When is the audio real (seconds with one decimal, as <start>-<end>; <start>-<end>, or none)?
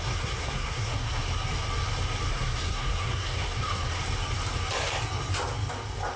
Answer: 1.3-2.3; 4.0-6.2